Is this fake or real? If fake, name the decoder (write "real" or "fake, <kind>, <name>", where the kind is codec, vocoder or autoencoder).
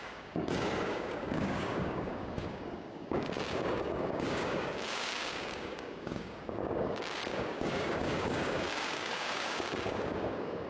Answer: fake, codec, DAC